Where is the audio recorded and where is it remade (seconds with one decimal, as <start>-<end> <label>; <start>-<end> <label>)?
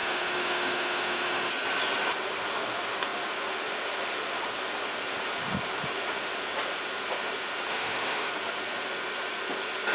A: 0.0-1.5 remade; 1.5-7.7 recorded; 7.7-8.3 remade; 8.3-9.9 recorded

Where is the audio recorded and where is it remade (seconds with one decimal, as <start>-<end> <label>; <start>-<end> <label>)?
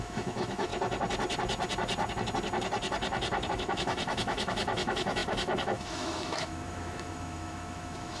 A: 0.0-0.7 remade; 0.7-3.5 recorded; 3.5-8.2 remade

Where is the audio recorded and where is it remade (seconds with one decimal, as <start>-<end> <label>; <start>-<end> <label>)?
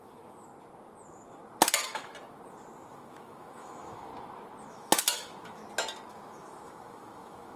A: 0.0-0.5 remade; 0.5-1.7 recorded; 1.7-2.1 remade; 2.1-2.9 recorded; 2.9-4.1 remade; 4.1-4.7 recorded; 4.7-5.6 remade; 5.6-6.1 recorded; 6.1-7.6 remade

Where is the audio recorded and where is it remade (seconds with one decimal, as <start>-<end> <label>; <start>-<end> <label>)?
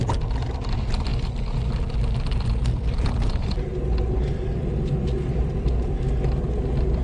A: 0.0-7.0 recorded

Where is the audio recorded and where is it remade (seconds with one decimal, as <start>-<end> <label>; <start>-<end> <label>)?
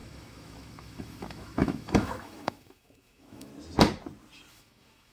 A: 0.0-3.5 remade; 3.5-4.5 recorded; 4.5-5.1 remade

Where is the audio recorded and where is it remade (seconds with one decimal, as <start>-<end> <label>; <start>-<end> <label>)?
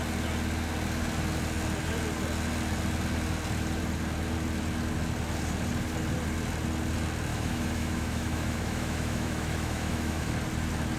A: 0.0-7.3 recorded; 7.3-10.3 remade; 10.3-11.0 recorded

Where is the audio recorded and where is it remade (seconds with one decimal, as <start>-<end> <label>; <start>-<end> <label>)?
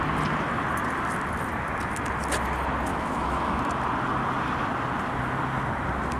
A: 0.0-2.9 recorded; 2.9-3.6 remade; 3.6-6.2 recorded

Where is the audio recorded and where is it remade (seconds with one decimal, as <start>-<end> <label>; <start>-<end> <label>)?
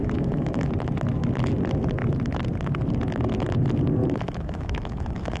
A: 0.0-0.7 remade; 0.7-4.0 recorded; 4.0-5.4 remade